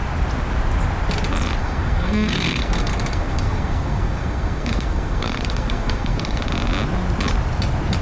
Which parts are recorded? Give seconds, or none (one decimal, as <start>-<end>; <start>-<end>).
0.0-1.6; 6.4-8.0